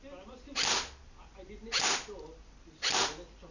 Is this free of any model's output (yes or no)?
yes